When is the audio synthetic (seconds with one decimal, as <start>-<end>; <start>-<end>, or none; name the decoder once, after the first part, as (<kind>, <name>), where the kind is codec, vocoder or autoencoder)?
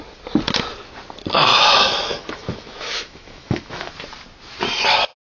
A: 1.5-3.9 (autoencoder, DAC-VAE)